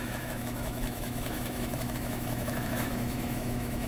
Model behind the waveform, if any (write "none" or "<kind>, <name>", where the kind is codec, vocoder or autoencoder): autoencoder, DAC-VAE